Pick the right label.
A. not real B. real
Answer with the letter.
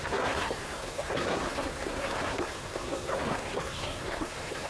A